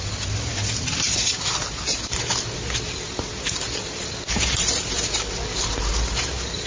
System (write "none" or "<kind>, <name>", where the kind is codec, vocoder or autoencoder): none